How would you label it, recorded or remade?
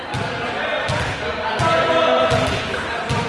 recorded